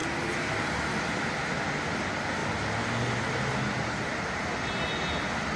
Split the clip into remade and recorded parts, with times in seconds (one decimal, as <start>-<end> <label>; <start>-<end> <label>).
0.0-5.6 recorded